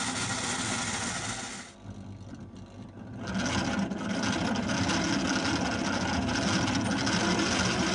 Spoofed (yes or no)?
no